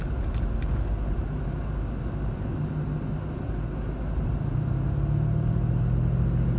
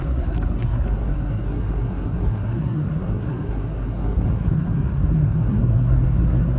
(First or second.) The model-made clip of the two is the second